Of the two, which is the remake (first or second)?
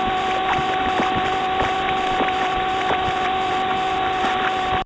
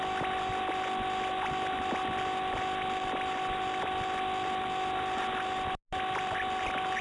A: first